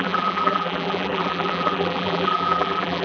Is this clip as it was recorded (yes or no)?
no